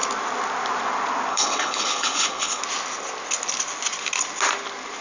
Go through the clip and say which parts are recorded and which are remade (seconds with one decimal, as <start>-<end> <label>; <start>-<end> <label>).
0.0-1.3 recorded; 1.3-2.6 remade; 2.6-5.0 recorded